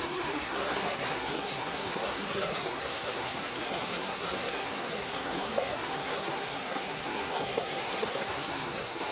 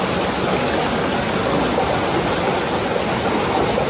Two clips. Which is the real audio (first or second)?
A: second